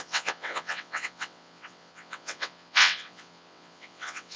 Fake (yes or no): yes